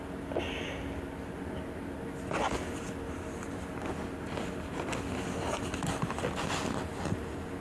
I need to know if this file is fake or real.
real